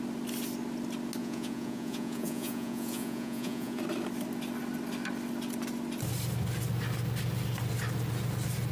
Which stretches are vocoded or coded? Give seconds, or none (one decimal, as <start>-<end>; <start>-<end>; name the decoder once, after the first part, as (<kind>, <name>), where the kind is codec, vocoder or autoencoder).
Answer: 1.2-3.8 (vocoder, Vocos)